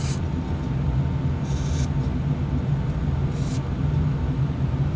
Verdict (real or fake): real